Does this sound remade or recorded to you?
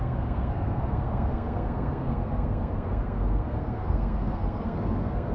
remade